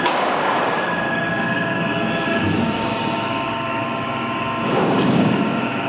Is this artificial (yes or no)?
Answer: yes